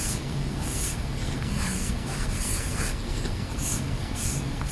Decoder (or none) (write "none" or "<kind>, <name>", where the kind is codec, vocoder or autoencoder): codec, SNAC